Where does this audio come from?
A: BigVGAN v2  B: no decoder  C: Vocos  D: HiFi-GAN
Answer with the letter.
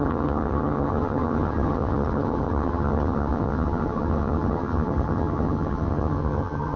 D